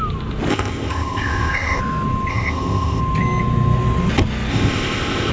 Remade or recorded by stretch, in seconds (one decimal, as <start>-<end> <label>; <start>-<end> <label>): 0.0-0.5 recorded; 0.5-1.8 remade; 1.8-2.3 recorded; 2.3-3.0 remade; 3.0-4.5 recorded; 4.5-5.3 remade